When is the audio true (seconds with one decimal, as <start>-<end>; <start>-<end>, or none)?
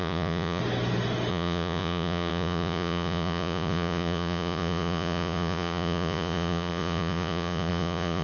0.6-1.3